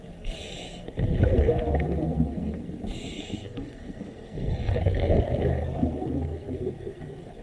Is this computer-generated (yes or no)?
yes